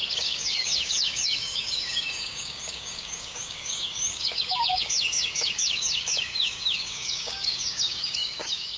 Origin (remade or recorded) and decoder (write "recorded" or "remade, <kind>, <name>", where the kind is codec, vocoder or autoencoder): remade, codec, DAC